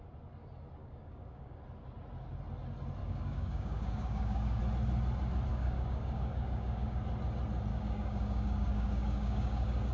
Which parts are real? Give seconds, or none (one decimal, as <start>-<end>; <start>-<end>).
0.0-0.8; 1.6-3.0; 4.6-5.5; 7.0-7.7